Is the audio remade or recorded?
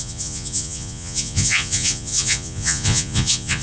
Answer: remade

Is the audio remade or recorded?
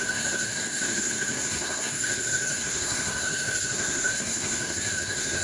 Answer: remade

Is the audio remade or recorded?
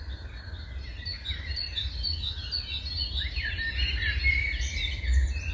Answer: recorded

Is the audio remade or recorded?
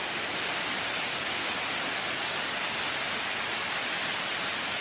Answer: recorded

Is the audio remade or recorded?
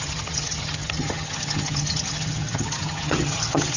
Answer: remade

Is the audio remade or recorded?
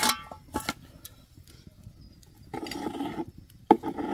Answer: recorded